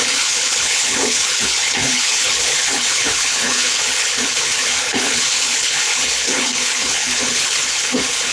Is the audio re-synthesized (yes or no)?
yes